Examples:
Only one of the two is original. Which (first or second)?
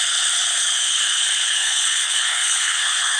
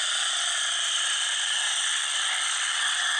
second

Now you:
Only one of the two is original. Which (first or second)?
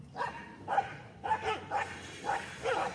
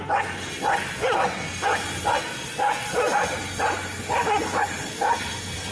second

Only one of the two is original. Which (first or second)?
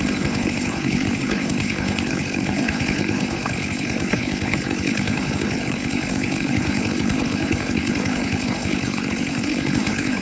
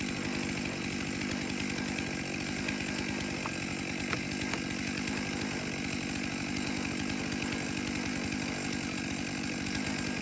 second